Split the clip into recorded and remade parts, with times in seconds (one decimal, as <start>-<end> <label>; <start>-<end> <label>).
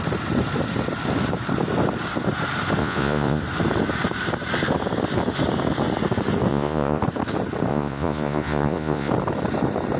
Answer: 0.0-2.8 recorded; 2.8-3.4 remade; 3.4-6.5 recorded; 6.5-7.0 remade; 7.0-7.7 recorded; 7.7-9.1 remade; 9.1-10.0 recorded